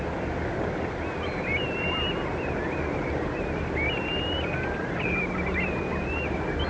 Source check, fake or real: fake